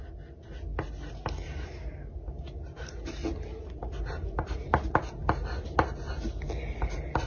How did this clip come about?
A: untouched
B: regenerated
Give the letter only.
A